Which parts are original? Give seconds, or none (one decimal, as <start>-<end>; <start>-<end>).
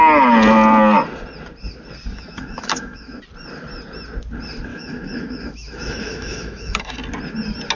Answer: 0.0-2.1; 3.2-4.7; 6.9-7.8